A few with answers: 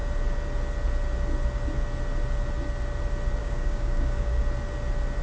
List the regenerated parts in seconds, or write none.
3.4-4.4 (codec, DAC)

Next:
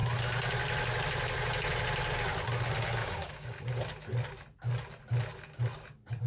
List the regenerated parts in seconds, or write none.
3.0-3.7 (codec, DAC)

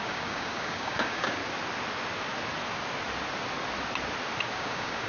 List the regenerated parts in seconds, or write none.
0.0-1.4 (codec, DAC); 4.5-5.1

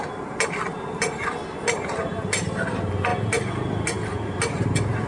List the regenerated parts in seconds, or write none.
none

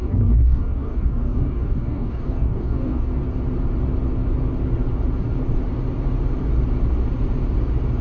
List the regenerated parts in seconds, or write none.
0.0-3.1 (codec, DAC)

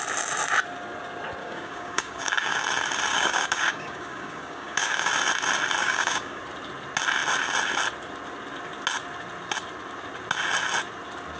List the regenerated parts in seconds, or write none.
1.4-2.6 (codec, DAC); 3.1-5.1; 5.8-6.4

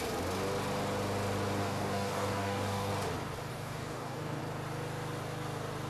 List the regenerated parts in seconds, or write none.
1.6-2.9 (codec, DAC); 3.5-4.4

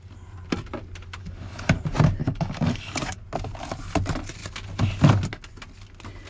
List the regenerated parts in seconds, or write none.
1.2-1.8 (codec, DAC); 2.2-3.2